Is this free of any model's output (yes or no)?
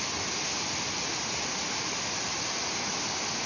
yes